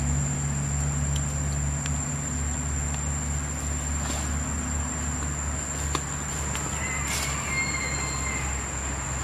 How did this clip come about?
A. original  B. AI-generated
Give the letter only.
A